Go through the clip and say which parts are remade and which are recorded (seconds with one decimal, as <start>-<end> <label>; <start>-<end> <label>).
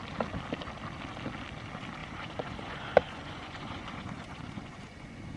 0.0-2.0 recorded; 2.0-5.4 remade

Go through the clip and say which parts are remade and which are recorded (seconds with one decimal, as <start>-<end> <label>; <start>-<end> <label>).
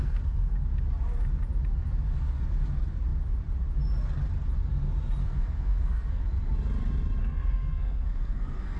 0.0-0.5 remade; 0.5-5.2 recorded; 5.2-6.2 remade; 6.2-7.2 recorded; 7.2-8.8 remade